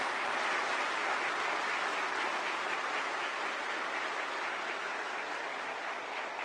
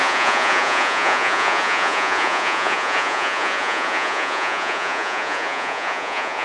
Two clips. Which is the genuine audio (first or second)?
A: first